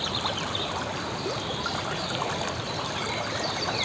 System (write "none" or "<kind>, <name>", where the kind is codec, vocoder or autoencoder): vocoder, BigVGAN v2